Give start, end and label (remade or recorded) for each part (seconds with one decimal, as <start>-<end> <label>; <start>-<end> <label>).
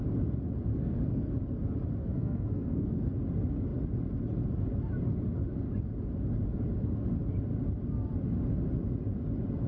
0.0-0.7 recorded; 0.7-1.3 remade; 1.3-2.0 recorded; 2.0-3.1 remade; 3.1-9.7 recorded